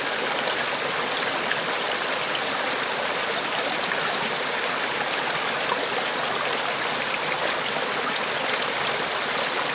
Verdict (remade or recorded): recorded